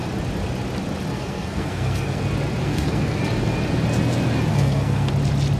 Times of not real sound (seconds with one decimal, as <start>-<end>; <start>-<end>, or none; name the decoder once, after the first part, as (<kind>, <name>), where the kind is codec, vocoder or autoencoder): 1.1-2.2 (codec, SNAC); 2.6-3.2; 4.5-5.1